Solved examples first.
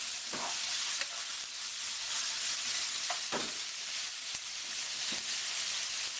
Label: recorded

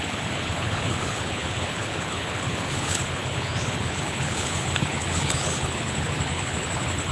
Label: remade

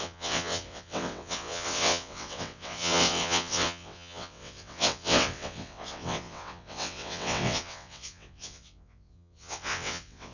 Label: remade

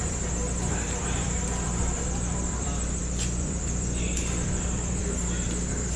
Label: remade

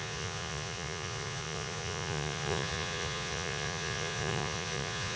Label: remade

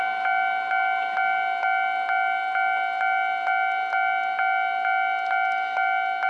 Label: recorded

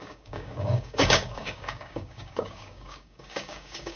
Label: remade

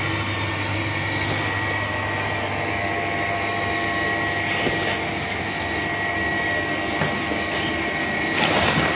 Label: recorded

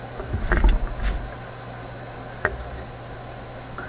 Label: recorded